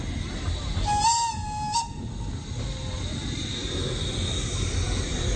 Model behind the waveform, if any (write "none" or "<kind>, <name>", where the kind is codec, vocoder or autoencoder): none